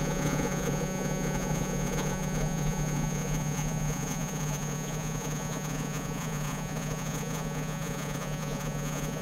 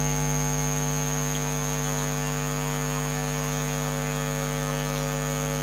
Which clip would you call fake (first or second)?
first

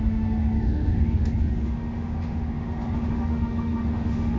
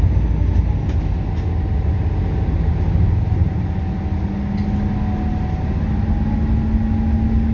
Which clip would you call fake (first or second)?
first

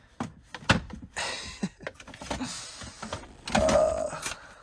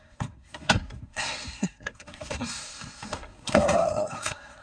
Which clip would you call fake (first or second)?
second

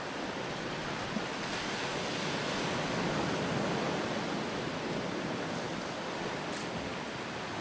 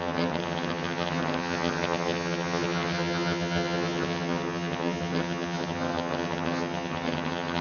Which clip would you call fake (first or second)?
second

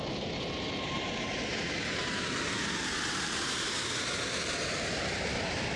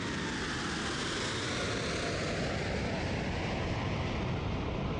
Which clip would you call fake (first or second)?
first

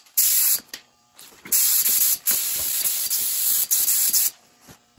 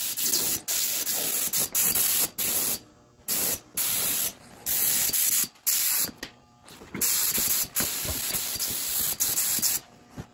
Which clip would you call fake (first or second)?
first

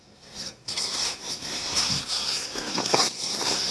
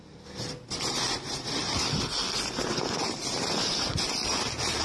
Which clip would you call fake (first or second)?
first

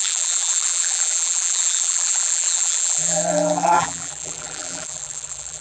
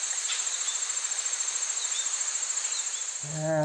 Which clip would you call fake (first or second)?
first